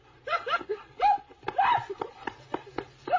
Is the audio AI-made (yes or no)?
no